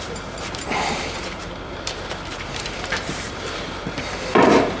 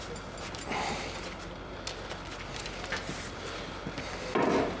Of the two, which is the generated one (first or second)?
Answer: first